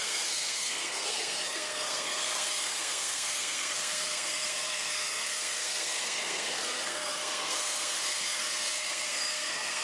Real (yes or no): no